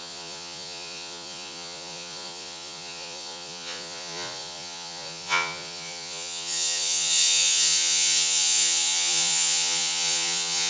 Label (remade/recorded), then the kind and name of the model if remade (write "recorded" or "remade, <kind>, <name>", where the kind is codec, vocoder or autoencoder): remade, vocoder, Vocos